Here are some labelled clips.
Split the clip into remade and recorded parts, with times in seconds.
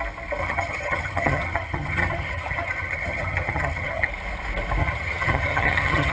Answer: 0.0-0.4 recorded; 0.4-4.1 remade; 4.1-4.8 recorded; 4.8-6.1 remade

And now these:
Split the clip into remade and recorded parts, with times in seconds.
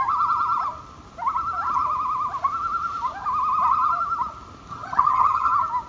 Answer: 0.0-4.7 recorded; 4.7-5.5 remade; 5.5-5.9 recorded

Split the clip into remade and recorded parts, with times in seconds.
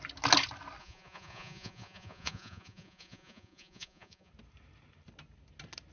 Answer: 0.0-0.8 recorded; 0.8-4.3 remade; 4.3-5.9 recorded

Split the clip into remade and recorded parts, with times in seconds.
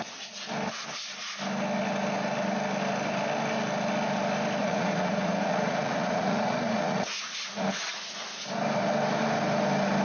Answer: 0.0-4.6 recorded; 4.6-8.1 remade; 8.1-10.0 recorded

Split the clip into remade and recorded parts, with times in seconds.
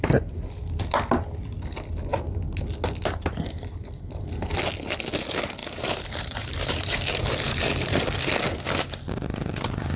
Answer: 0.0-5.6 recorded; 5.6-8.0 remade; 8.0-10.0 recorded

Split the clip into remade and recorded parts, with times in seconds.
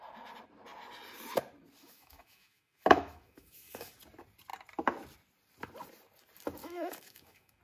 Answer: 0.0-1.8 recorded; 1.8-3.9 remade; 3.9-6.6 recorded; 6.6-7.6 remade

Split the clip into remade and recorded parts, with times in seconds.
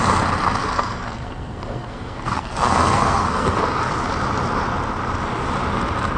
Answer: 0.0-0.6 recorded; 0.6-3.9 remade; 3.9-6.2 recorded